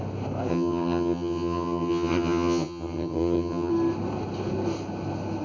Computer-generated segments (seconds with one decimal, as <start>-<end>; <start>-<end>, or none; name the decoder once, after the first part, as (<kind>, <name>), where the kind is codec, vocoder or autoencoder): 0.5-3.7 (vocoder, HiFi-GAN)